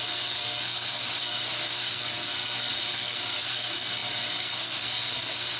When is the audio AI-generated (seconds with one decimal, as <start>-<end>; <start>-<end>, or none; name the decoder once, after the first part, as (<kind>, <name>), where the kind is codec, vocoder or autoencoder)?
0.0-5.6 (codec, SNAC)